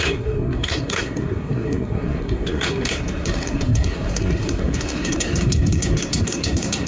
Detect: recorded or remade remade